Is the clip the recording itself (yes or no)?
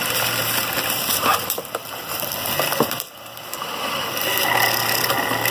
no